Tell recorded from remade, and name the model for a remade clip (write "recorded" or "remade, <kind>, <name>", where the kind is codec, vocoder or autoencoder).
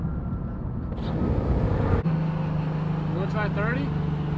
recorded